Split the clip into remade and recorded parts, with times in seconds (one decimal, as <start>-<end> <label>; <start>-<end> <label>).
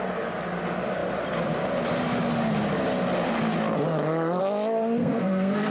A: 0.0-5.0 recorded; 5.0-5.7 remade